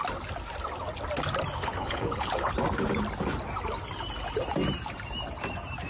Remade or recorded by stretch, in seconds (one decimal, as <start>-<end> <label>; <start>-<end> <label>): 0.0-1.8 recorded; 1.8-2.5 remade; 2.5-5.9 recorded